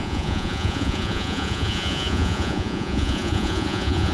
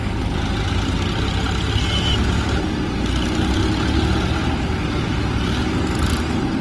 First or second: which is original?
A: second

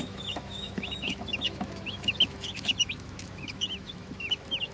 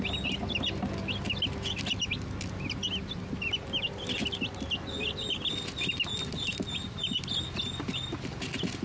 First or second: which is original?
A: second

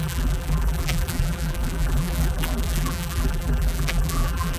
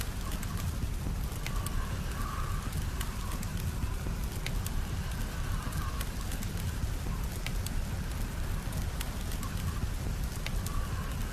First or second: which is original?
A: second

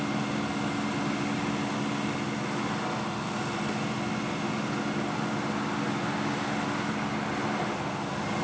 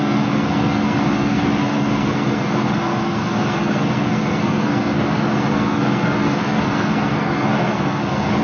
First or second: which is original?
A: first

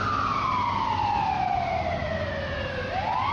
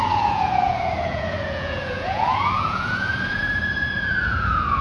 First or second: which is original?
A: first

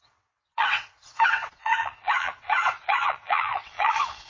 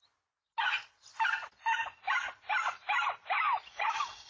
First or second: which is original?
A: second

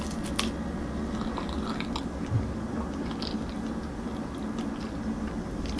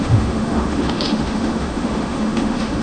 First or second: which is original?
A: first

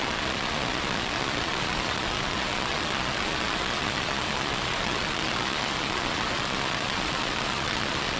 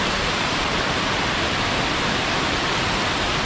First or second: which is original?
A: second